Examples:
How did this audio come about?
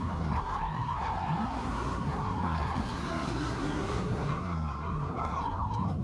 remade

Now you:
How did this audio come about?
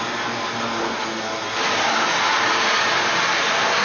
recorded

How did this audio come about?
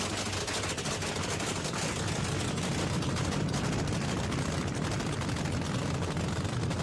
recorded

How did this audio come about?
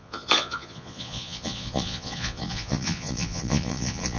remade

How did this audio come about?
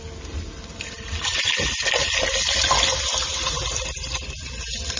recorded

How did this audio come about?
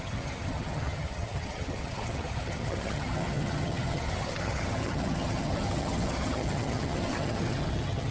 remade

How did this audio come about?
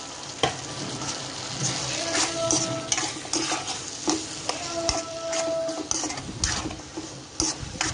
recorded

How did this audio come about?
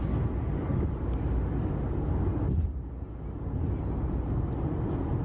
recorded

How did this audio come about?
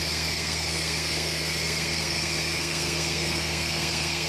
remade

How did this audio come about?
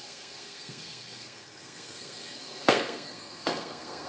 remade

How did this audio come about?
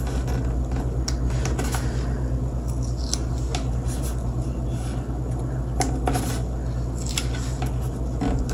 recorded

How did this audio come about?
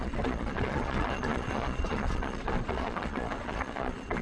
remade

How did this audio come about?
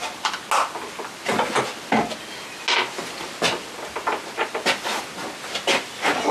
recorded